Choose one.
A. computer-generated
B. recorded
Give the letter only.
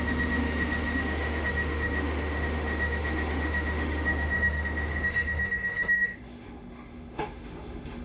A